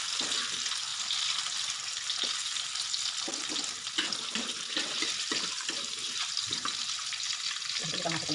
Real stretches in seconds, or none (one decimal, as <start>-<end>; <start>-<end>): 0.0-8.3